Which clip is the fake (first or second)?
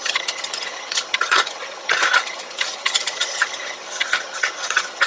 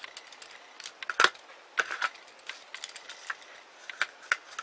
first